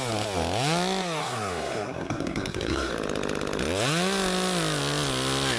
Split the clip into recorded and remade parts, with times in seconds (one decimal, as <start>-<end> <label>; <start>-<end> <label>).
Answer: 0.0-1.2 recorded; 1.2-2.9 remade; 2.9-5.6 recorded